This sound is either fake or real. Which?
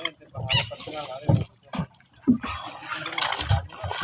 real